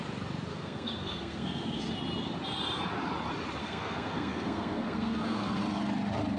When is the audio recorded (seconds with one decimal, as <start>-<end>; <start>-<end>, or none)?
0.0-0.5; 1.8-3.6; 5.6-6.4